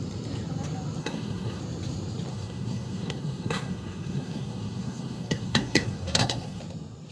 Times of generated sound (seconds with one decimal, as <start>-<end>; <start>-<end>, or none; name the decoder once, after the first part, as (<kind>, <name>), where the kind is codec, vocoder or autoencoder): 1.0-1.6 (codec, SNAC); 2.3-6.6